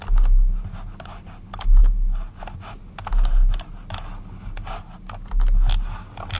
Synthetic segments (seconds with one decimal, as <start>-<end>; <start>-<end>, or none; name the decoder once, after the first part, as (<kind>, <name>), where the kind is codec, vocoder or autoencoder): none